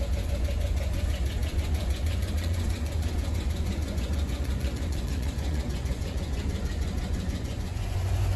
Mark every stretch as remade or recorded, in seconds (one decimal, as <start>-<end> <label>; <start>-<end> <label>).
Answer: 0.0-8.4 remade